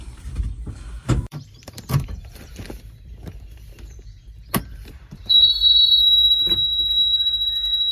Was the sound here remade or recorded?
remade